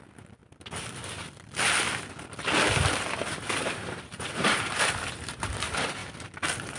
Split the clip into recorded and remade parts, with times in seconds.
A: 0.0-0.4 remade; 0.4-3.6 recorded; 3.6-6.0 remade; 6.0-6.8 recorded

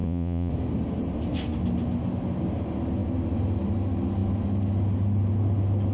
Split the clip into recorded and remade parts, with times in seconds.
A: 0.0-0.5 remade; 0.5-5.9 recorded

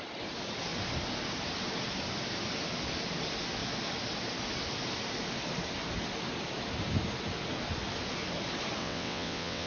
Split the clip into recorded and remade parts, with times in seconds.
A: 0.0-8.8 recorded; 8.8-9.7 remade

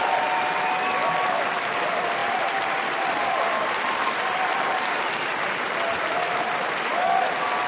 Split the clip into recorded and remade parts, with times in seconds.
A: 0.0-7.7 recorded